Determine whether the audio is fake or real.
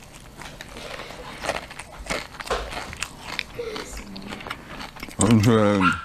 real